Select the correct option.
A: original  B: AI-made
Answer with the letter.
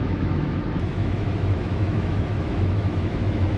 B